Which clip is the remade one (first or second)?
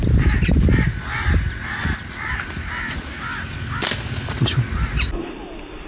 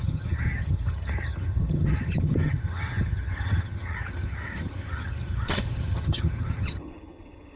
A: second